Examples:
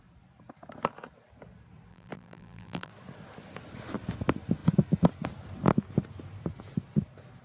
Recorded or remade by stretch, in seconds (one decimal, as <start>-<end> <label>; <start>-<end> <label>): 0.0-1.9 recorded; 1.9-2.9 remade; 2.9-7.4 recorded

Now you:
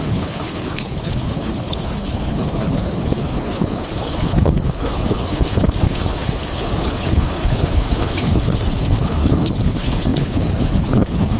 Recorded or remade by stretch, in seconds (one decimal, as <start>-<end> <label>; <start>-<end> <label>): 0.0-11.4 remade

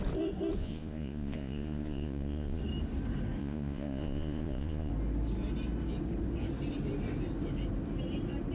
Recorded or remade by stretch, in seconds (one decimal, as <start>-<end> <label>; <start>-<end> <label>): 0.0-0.6 recorded; 0.6-2.6 remade; 2.6-3.4 recorded; 3.4-4.9 remade; 4.9-8.5 recorded